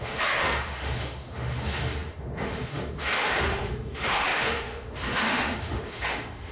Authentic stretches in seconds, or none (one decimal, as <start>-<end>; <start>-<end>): none